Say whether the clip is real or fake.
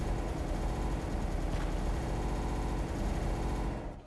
real